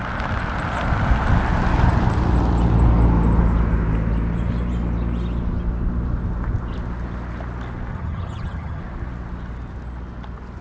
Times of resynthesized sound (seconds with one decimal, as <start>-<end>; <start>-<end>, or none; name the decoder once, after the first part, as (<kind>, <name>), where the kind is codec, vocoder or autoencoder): 7.9-8.8 (vocoder, HiFi-GAN)